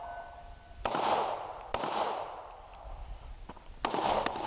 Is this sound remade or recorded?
recorded